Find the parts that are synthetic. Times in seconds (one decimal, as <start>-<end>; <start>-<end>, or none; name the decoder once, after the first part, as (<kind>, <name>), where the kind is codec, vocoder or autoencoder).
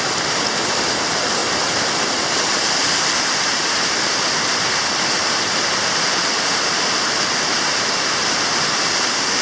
none